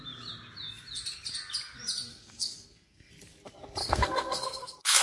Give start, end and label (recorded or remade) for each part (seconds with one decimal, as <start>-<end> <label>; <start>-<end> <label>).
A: 0.0-2.1 recorded; 2.1-3.1 remade; 3.1-3.8 recorded; 3.8-5.0 remade